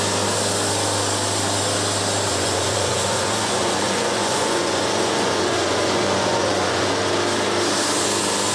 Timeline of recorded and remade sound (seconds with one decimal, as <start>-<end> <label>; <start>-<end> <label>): 0.0-2.3 recorded; 2.3-6.9 remade; 6.9-8.5 recorded